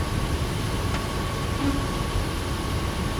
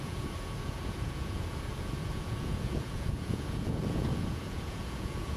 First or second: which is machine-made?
second